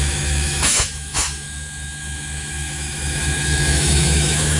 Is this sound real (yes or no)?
no